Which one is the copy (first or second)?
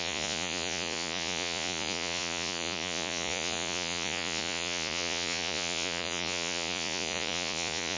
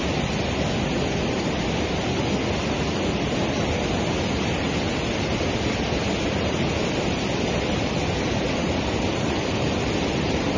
first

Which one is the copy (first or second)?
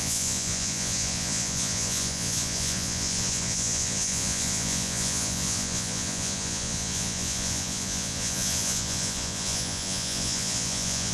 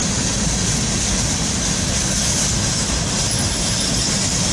first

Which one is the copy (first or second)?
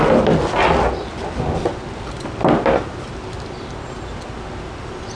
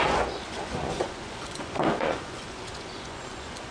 second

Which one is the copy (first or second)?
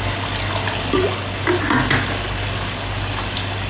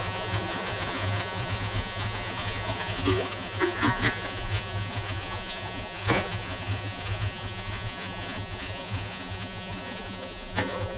second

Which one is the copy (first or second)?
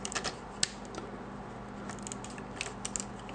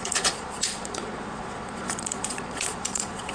second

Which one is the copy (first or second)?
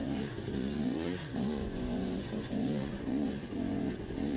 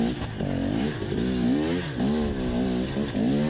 first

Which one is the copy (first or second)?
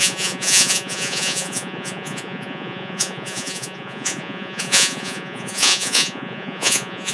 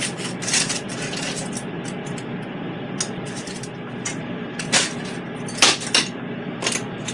first